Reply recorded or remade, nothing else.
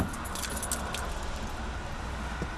recorded